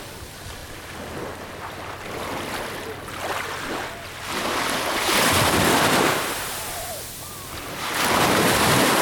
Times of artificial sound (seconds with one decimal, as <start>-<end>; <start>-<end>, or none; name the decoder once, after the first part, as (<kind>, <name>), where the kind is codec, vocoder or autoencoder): 0.0-0.6 (vocoder, BigVGAN v2); 4.3-9.0